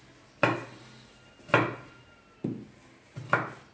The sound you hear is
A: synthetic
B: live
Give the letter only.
B